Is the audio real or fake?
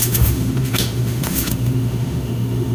fake